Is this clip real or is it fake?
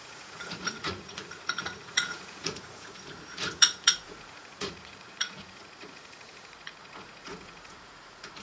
fake